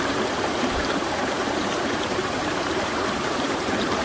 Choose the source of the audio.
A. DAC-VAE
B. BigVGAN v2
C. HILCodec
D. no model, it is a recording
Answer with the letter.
B